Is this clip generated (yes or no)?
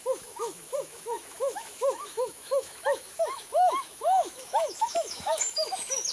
yes